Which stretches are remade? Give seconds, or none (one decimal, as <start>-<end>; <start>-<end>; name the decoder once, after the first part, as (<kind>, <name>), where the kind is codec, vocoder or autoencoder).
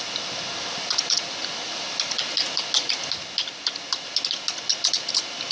none